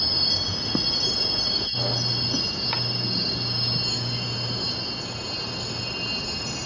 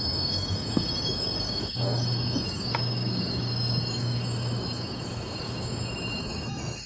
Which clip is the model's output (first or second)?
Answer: second